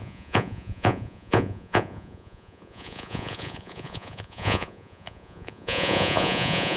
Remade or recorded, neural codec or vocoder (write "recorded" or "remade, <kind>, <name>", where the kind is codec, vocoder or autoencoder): remade, vocoder, Vocos